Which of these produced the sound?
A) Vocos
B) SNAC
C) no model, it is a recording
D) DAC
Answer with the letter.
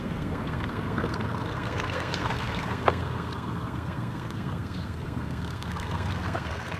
B